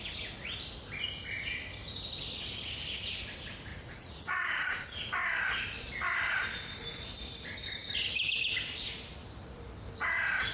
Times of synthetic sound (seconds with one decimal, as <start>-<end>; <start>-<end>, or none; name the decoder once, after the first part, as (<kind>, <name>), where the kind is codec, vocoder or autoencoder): 3.7-5.1 (vocoder, Vocos)